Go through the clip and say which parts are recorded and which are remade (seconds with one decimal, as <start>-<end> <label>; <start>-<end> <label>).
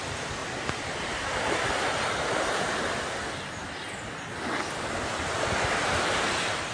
0.0-0.4 recorded; 0.4-2.5 remade; 2.5-6.7 recorded